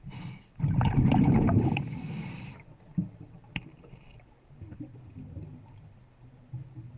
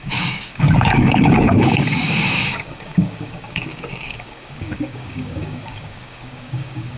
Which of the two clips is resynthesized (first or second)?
second